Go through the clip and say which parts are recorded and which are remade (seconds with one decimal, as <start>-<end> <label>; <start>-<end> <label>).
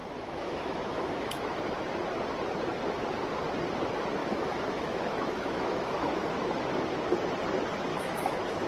0.0-1.6 remade; 1.6-4.2 recorded; 4.2-6.3 remade; 6.3-7.9 recorded; 7.9-8.7 remade